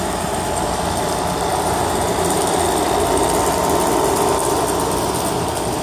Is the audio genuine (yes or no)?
yes